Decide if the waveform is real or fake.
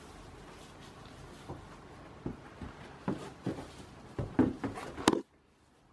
real